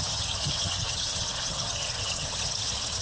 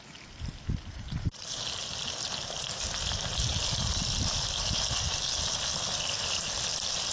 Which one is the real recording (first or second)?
second